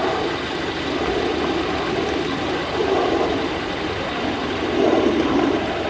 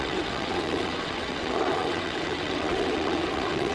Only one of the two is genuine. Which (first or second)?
first